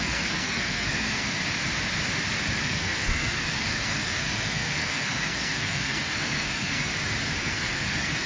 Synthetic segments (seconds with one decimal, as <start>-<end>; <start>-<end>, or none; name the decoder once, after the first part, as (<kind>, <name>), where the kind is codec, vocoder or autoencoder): 0.0-1.4 (codec, SNAC); 2.6-6.9; 7.4-8.3